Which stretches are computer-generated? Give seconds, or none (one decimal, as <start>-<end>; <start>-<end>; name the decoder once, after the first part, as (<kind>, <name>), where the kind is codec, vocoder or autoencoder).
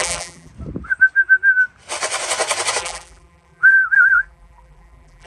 0.0-0.5 (vocoder, BigVGAN v2); 2.8-5.3